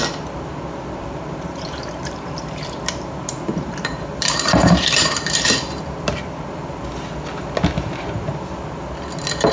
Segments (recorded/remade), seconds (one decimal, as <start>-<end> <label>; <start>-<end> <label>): 0.0-1.0 recorded; 1.0-6.2 remade; 6.2-9.5 recorded